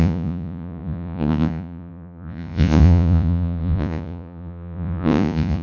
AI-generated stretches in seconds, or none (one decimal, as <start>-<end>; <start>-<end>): 0.0-5.6